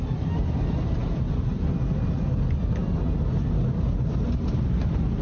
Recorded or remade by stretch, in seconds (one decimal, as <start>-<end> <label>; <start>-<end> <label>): 0.0-5.2 recorded